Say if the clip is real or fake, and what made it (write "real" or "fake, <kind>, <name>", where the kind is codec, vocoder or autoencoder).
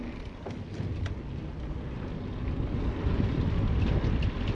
real